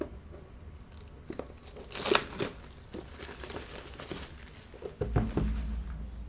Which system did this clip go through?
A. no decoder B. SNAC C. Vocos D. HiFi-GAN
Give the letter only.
A